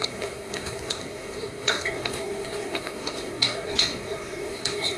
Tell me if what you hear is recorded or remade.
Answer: remade